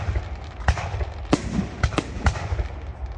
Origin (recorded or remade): recorded